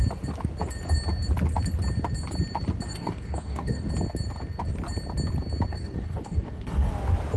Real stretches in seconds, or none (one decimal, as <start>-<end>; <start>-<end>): 0.0-2.9; 3.9-5.7; 6.9-7.4